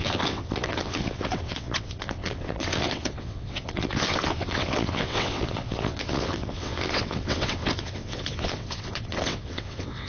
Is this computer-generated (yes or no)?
yes